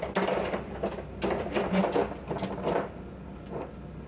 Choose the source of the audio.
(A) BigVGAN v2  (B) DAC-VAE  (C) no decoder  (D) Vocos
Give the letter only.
C